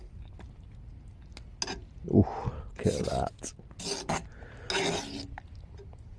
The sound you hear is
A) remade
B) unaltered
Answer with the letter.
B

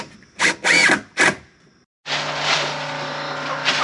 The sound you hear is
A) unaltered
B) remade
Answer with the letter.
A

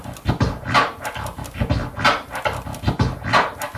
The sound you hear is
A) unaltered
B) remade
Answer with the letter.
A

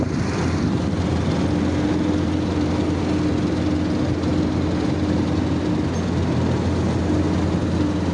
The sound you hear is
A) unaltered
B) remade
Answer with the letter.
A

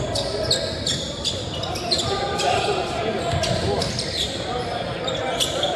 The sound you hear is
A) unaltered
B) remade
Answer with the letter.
A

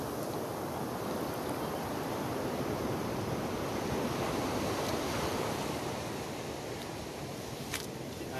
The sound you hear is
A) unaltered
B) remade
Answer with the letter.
B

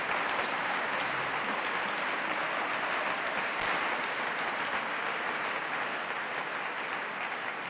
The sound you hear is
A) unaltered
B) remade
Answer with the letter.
A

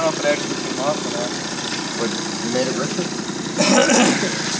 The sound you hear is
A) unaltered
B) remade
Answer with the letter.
A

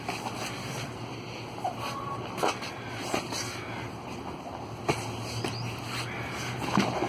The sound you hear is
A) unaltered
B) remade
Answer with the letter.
A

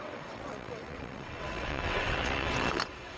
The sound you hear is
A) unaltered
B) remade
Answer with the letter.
B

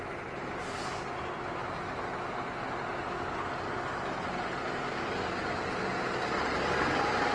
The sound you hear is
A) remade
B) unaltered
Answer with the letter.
B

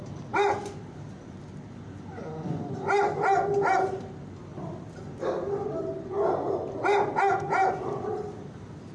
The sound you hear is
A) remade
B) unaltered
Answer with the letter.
B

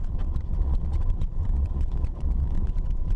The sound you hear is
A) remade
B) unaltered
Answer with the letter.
A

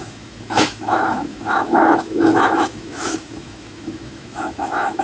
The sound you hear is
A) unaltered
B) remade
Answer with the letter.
B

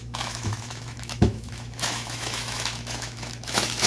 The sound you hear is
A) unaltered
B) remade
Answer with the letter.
B